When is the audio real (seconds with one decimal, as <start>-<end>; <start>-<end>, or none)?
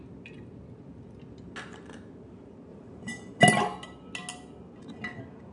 0.0-2.7; 3.4-5.5